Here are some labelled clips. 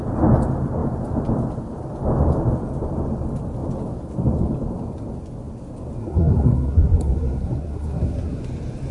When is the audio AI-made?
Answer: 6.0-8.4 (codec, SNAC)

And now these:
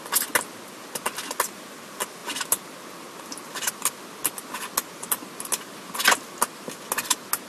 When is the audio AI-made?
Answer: none

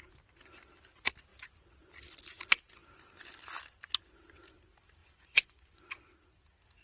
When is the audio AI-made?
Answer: 5.0-5.8 (vocoder, Vocos)

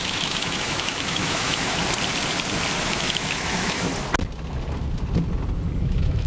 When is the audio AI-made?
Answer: 0.0-1.8 (autoencoder, DAC-VAE); 2.8-3.9; 5.8-6.3

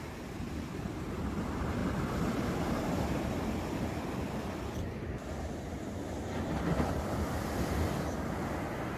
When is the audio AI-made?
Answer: none

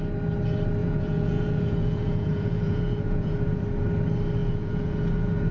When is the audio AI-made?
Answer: 0.8-3.6 (vocoder, Vocos); 4.4-5.5